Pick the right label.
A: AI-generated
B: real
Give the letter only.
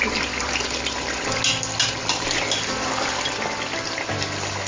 B